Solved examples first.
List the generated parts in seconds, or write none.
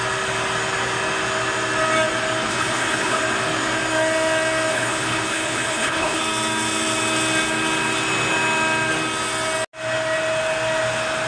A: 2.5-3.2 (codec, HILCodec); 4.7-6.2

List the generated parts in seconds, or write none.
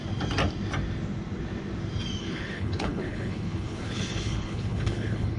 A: 2.2-5.4 (codec, HILCodec)